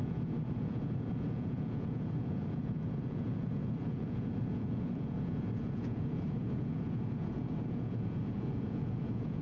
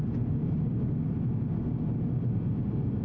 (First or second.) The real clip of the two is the second